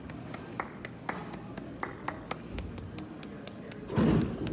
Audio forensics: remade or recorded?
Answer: recorded